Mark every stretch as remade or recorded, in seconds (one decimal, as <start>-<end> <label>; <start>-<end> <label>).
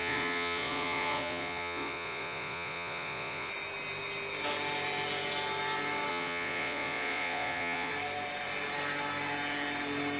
0.0-3.5 remade; 3.5-6.1 recorded; 6.1-7.9 remade; 7.9-10.2 recorded